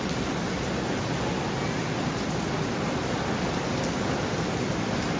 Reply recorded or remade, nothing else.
recorded